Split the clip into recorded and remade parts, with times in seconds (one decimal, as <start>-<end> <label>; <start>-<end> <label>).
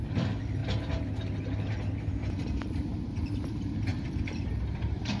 0.0-0.6 remade; 0.6-2.8 recorded; 2.8-5.2 remade